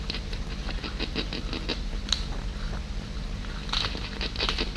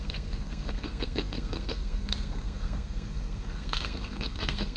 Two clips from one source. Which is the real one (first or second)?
first